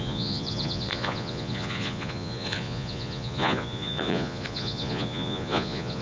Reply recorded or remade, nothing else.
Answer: remade